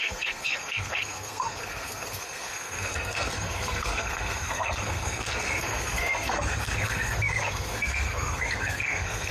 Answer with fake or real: fake